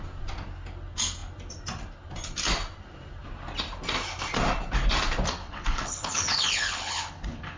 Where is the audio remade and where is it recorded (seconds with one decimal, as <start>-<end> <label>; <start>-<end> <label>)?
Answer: 0.0-5.4 recorded; 5.4-7.6 remade